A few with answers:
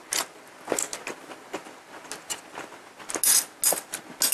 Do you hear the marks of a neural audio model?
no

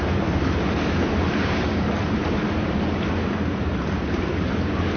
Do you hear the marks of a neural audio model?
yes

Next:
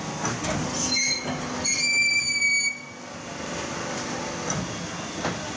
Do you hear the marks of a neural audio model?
no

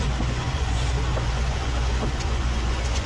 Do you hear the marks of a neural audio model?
yes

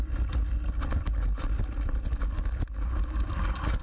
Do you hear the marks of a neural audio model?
no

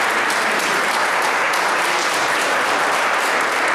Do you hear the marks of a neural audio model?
yes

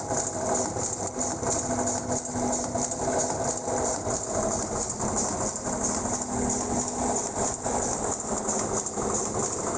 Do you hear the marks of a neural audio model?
no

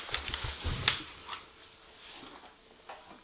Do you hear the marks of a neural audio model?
no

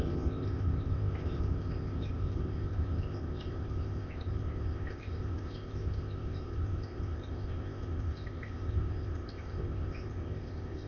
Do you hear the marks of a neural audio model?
yes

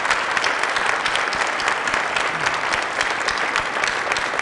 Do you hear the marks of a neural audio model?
no